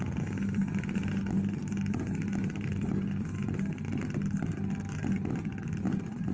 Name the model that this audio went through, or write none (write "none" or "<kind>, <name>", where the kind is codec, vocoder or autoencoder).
none